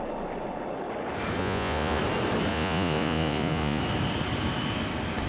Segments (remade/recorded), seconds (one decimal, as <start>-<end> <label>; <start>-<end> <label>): 0.0-1.4 recorded; 1.4-2.0 remade; 2.0-2.5 recorded; 2.5-3.8 remade; 3.8-5.3 recorded